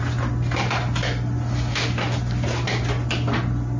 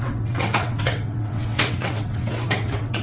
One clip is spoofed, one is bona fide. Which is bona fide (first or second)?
first